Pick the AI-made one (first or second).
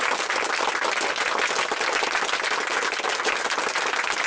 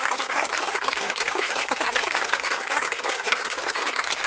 second